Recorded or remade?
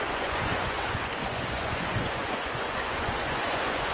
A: remade